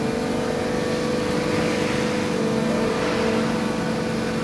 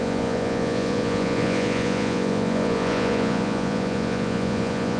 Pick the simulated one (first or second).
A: second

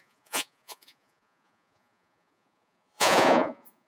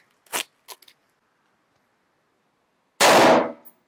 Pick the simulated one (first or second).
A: first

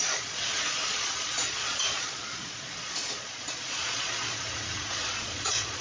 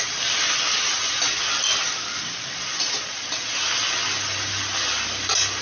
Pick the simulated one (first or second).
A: first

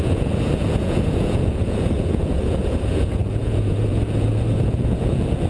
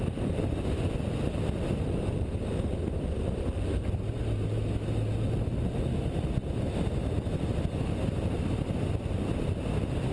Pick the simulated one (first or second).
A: first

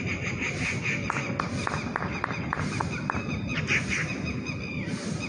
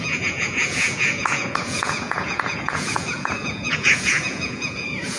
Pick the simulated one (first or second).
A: second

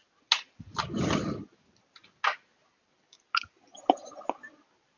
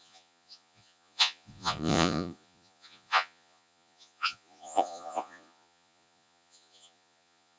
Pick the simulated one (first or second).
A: second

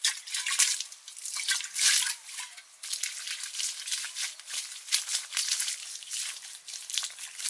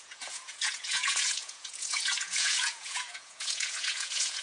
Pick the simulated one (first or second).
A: second